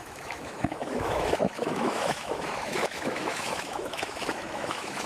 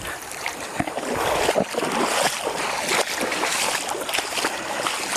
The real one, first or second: second